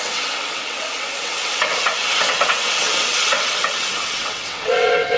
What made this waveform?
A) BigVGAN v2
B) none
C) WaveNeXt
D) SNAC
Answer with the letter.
C